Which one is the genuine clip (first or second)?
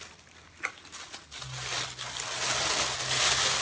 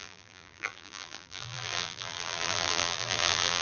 first